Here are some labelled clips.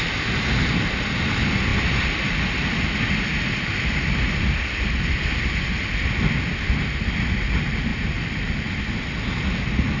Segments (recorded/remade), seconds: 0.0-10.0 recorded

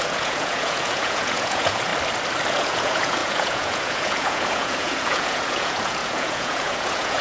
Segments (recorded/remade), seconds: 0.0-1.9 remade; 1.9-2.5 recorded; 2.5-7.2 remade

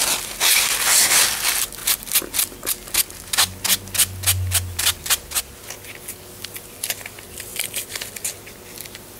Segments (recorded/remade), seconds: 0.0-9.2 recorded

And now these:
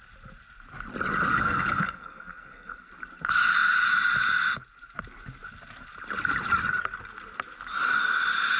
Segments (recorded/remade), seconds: 0.0-1.3 recorded; 1.3-2.9 remade; 2.9-8.6 recorded

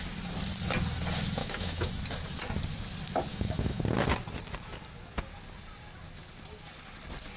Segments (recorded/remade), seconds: 0.0-1.4 recorded; 1.4-1.9 remade; 1.9-3.3 recorded; 3.3-3.8 remade; 3.8-7.4 recorded

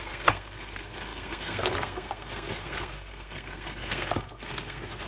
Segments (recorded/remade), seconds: 0.0-5.1 remade

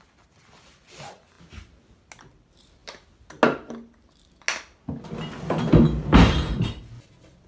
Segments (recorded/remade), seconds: 0.0-7.5 recorded

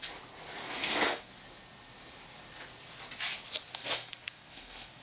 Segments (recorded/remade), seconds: 0.0-0.6 recorded; 0.6-1.3 remade; 1.3-3.8 recorded; 3.8-5.0 remade